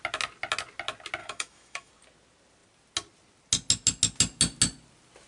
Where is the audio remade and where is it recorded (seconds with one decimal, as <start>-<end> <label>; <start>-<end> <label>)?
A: 0.0-1.2 recorded; 1.2-1.9 remade; 1.9-5.3 recorded